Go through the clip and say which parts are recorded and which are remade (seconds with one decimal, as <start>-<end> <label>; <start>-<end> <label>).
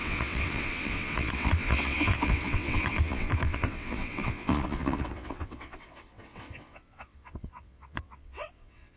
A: 0.0-9.0 remade